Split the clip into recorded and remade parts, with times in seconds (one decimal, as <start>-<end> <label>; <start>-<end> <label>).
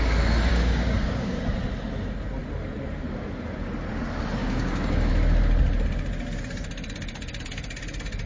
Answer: 0.0-0.5 recorded; 0.5-1.4 remade; 1.4-4.4 recorded; 4.4-5.1 remade; 5.1-8.3 recorded